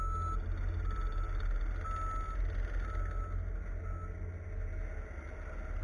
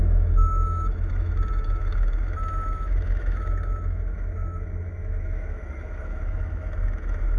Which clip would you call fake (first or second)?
second